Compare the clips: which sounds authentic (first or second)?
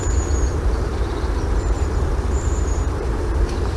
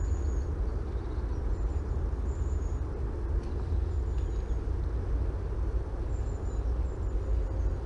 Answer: second